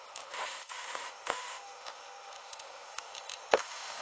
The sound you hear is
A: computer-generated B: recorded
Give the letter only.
A